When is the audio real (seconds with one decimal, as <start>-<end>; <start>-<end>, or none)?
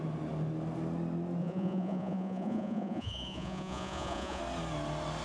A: 0.0-1.4; 4.4-5.2